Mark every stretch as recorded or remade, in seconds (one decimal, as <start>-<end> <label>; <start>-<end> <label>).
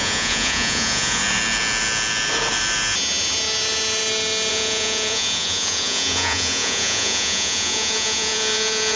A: 0.0-1.2 remade; 1.2-4.5 recorded; 4.5-9.0 remade